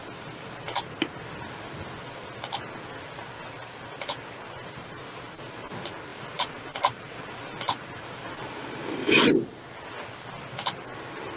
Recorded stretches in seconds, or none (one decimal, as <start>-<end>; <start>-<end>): 0.0-6.1; 9.2-11.4